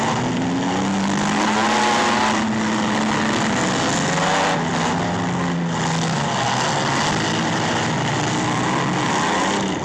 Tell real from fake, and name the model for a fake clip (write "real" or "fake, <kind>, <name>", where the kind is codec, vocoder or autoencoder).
real